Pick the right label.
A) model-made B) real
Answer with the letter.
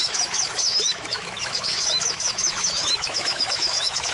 A